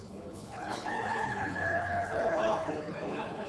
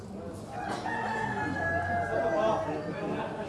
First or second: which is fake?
first